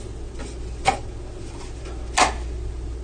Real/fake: real